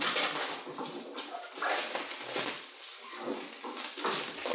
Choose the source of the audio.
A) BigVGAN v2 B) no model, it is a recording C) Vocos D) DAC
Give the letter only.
B